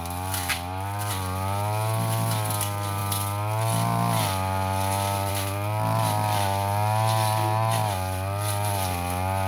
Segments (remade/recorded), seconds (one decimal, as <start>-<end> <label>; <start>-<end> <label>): 0.0-9.5 recorded